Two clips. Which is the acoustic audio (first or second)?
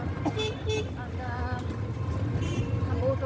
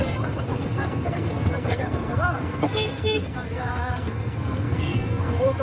first